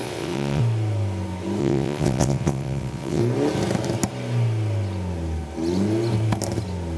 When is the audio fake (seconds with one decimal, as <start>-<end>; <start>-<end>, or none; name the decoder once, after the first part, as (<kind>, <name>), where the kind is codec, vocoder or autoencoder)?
0.0-0.6 (vocoder, WaveNeXt); 1.6-3.2